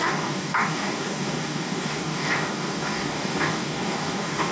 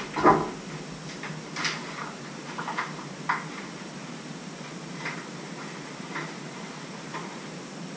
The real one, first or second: second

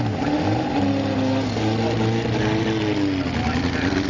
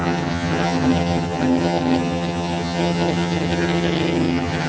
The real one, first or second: first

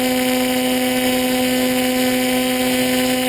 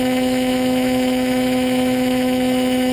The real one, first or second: first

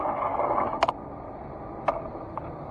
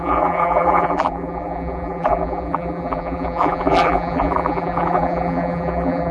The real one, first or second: first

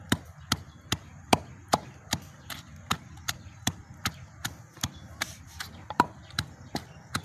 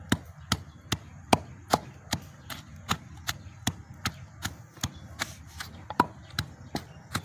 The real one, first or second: second